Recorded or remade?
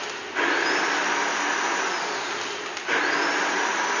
recorded